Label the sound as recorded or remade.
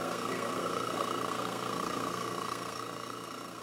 remade